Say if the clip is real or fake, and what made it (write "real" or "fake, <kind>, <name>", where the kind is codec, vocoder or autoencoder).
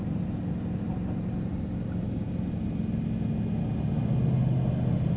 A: real